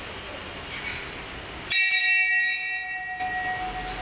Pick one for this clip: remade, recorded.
recorded